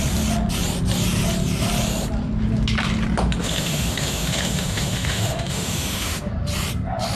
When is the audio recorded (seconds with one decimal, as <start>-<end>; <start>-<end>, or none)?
0.0-3.4; 6.3-7.1